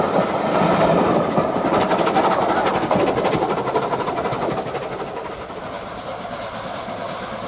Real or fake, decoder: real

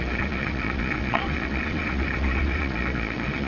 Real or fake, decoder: fake, vocoder, Vocos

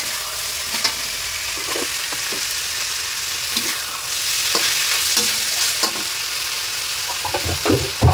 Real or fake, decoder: real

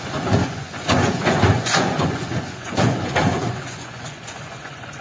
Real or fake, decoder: fake, vocoder, Vocos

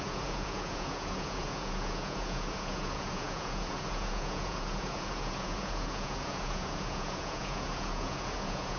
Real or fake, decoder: fake, vocoder, Vocos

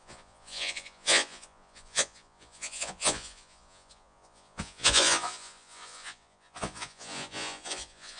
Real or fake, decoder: fake, vocoder, Vocos